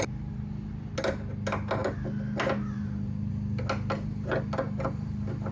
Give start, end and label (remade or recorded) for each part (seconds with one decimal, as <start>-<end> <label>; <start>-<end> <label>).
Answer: 0.0-5.5 recorded